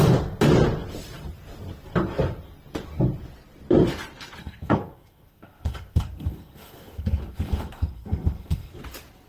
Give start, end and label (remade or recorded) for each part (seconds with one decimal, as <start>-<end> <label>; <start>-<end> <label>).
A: 0.0-4.4 recorded; 4.4-8.7 remade; 8.7-9.3 recorded